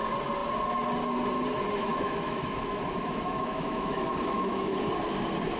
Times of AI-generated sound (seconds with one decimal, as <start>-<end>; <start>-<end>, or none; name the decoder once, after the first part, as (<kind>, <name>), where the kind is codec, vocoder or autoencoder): 1.8-4.9 (autoencoder, DAC-VAE)